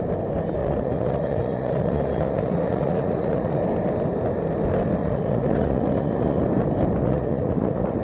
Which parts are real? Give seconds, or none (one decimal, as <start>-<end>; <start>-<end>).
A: 0.0-0.6; 3.6-5.0; 6.4-7.0